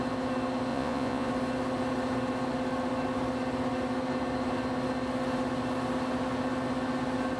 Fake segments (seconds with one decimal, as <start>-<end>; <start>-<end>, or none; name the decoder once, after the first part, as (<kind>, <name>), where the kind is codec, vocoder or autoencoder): 0.7-1.3 (vocoder, Vocos)